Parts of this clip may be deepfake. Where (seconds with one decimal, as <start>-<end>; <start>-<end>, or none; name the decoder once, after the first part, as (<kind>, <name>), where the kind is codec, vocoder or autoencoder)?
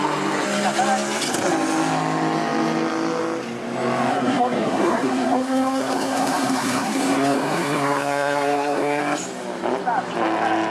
4.1-9.0 (codec, SNAC)